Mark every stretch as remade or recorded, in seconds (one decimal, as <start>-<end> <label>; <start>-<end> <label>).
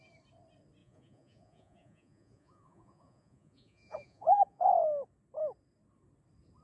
0.0-0.8 recorded; 0.8-4.7 remade; 4.7-6.6 recorded